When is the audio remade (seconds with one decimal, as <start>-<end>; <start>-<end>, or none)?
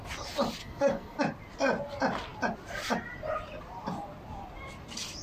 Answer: 0.6-1.2